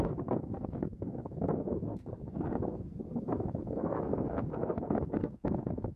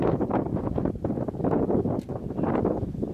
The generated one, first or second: first